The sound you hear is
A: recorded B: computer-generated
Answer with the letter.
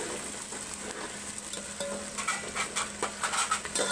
A